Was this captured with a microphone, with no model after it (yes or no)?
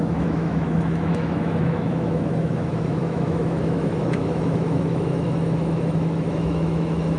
no